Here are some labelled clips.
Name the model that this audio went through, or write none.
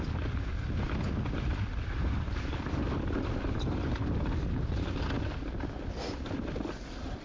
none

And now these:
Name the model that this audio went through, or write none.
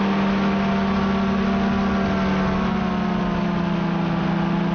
none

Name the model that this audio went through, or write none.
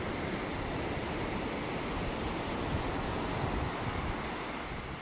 none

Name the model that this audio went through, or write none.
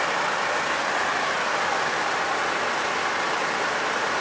none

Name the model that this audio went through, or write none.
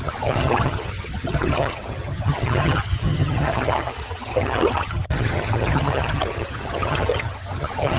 vocoder, HiFi-GAN